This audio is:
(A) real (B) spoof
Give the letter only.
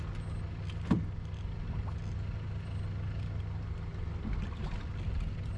A